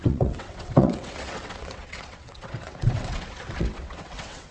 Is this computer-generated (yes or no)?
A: yes